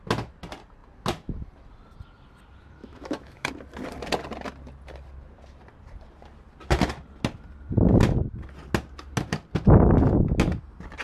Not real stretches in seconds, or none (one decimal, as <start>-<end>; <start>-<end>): 2.8-3.5

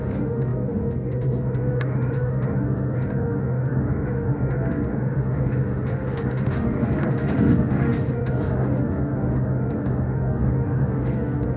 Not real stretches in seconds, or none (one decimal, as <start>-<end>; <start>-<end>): 0.0-11.6

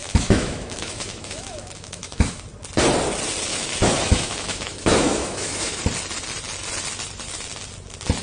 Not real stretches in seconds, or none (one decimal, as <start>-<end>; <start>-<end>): 0.0-2.4; 3.5-5.8

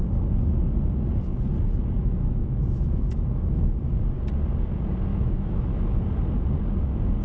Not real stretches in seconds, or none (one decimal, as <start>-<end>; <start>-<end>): 2.0-3.9; 5.1-6.0